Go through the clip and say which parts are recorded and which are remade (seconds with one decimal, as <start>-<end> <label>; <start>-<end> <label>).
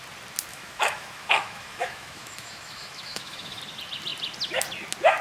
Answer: 0.0-0.5 recorded; 0.5-3.6 remade; 3.6-5.2 recorded